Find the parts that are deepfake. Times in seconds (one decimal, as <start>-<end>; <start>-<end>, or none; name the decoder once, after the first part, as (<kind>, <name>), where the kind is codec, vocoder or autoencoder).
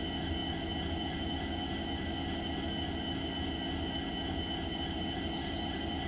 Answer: none